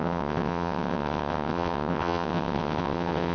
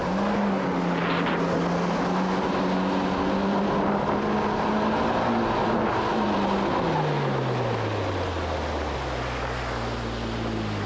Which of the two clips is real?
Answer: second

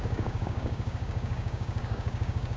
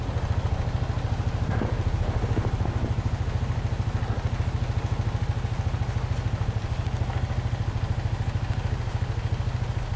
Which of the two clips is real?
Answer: second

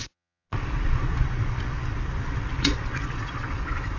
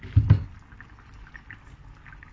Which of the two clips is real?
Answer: second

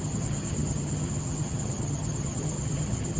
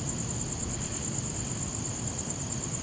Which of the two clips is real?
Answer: second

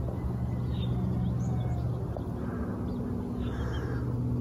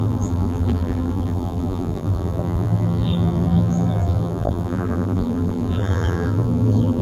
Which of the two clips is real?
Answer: first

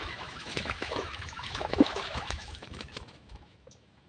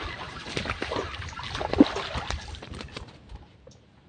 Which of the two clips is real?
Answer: second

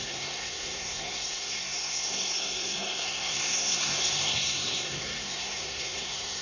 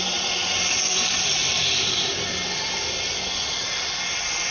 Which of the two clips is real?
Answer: second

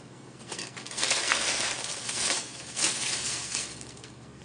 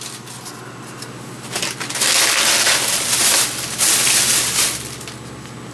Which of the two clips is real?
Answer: second